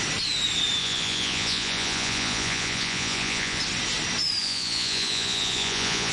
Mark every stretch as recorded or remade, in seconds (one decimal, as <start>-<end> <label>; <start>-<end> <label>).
0.0-0.8 recorded; 0.8-3.6 remade; 3.6-4.4 recorded; 4.4-6.1 remade